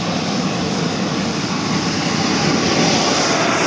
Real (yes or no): yes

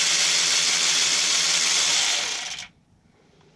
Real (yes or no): yes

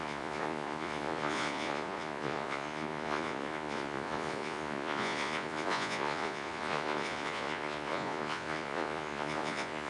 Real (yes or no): no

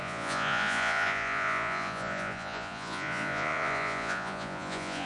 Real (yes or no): no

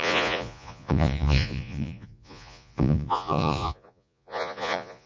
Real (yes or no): no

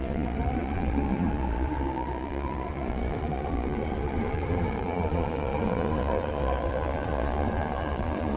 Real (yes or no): no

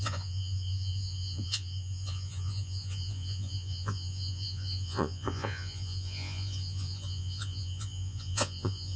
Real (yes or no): no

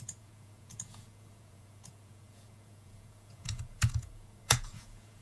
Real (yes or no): no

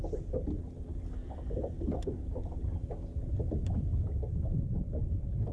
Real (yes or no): yes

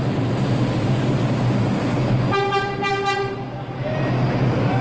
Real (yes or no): yes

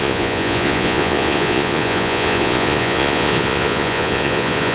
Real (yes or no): no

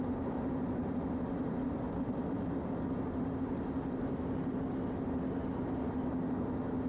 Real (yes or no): yes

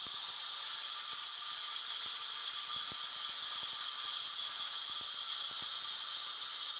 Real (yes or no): yes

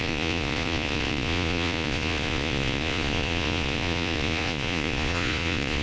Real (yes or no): no